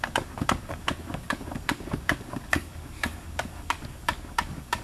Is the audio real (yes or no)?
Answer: no